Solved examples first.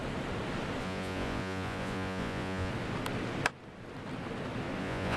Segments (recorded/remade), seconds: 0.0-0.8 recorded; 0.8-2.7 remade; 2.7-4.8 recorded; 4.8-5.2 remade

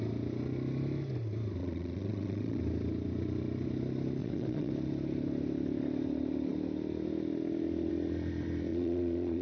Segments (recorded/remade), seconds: 0.0-1.6 recorded; 1.6-2.6 remade; 2.6-4.2 recorded; 4.2-4.7 remade; 4.7-8.7 recorded; 8.7-9.4 remade

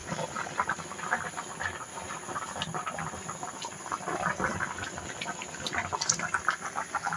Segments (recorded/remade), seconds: 0.0-7.2 recorded

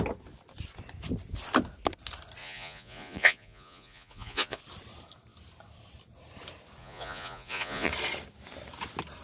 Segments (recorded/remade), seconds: 0.0-2.4 recorded; 2.4-4.6 remade; 4.6-6.8 recorded; 6.8-7.9 remade; 7.9-9.2 recorded

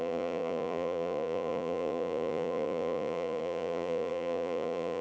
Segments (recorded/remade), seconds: 0.0-5.0 remade

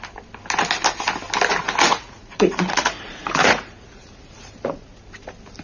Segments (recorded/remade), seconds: 0.0-1.9 recorded; 1.9-5.1 remade; 5.1-5.6 recorded

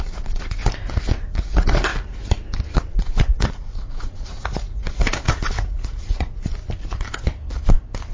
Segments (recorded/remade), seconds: 0.0-0.6 remade; 0.6-1.5 recorded; 1.5-1.9 remade; 1.9-2.9 recorded; 2.9-6.6 remade; 6.6-8.1 recorded

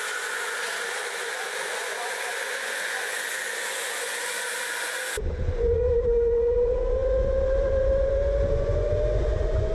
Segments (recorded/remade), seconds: 0.0-9.7 remade